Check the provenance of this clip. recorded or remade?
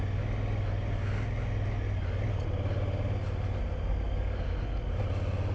recorded